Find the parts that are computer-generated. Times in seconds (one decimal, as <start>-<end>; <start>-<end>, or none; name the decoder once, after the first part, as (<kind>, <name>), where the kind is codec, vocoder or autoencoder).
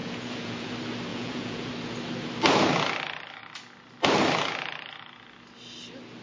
0.0-0.7 (vocoder, Vocos); 1.1-1.7